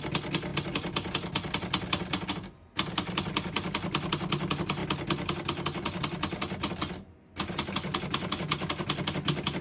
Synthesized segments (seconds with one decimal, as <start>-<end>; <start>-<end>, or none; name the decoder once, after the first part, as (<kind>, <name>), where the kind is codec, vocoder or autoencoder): none